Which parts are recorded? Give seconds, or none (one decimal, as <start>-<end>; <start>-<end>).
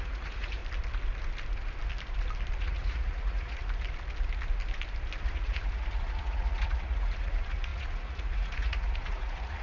0.6-2.6; 3.6-5.2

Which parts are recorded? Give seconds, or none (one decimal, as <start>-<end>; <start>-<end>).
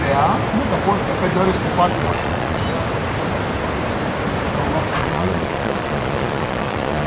0.0-1.9; 2.6-5.0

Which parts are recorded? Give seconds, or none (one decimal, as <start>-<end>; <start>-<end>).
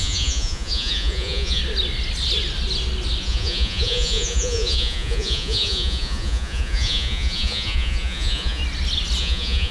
1.6-3.2; 8.6-9.2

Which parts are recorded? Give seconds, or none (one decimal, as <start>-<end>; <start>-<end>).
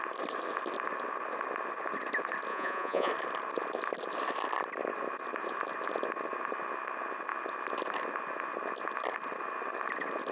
0.0-2.5; 3.1-10.3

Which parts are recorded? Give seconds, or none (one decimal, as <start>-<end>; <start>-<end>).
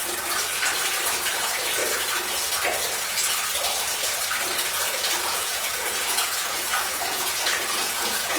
0.0-1.3; 1.8-5.2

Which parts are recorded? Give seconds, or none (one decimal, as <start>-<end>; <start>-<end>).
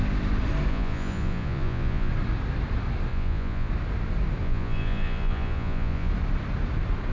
0.0-0.7; 2.1-3.1; 3.7-4.4; 6.1-7.1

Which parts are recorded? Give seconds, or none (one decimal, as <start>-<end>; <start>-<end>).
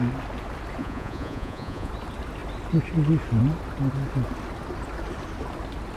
0.0-0.8; 1.9-6.0